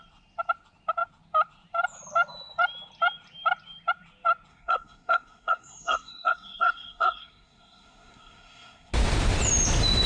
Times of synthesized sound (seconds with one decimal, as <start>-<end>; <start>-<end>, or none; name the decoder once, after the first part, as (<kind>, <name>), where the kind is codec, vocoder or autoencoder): 4.5-8.9 (codec, SNAC)